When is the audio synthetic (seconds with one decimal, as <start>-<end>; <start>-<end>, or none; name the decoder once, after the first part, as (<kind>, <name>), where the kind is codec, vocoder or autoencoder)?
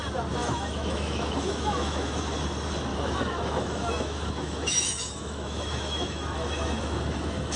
0.4-2.2 (autoencoder, DAC-VAE); 2.9-7.6